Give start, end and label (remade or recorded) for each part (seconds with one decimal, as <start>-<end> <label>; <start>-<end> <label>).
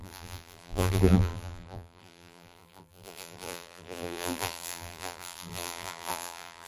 0.0-6.7 remade